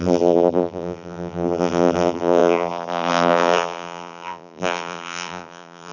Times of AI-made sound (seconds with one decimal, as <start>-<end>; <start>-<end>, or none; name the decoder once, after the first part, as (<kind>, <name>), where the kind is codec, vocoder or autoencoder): 0.0-5.9 (vocoder, BigVGAN v2)